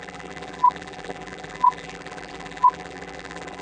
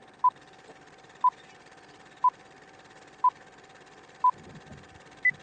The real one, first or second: second